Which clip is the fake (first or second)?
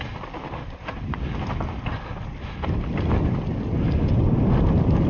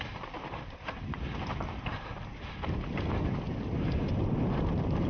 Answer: second